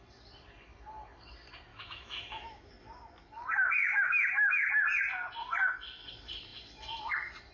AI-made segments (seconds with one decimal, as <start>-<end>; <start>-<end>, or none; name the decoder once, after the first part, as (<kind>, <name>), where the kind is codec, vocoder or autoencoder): 1.7-2.7 (autoencoder, DAC-VAE); 3.8-4.7